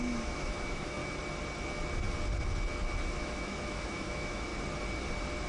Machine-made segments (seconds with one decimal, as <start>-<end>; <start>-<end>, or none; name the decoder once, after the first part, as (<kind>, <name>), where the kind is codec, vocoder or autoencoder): 0.0-1.0 (autoencoder, DAC-VAE); 3.2-4.5